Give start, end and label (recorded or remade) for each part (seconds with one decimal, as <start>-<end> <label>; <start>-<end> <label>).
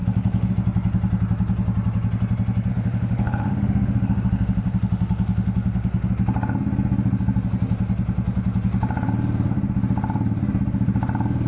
0.0-0.5 remade; 0.5-2.7 recorded; 2.7-6.1 remade; 6.1-11.5 recorded